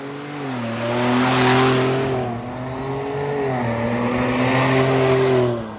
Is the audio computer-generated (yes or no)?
no